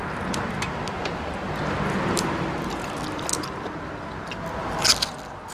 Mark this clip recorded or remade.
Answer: recorded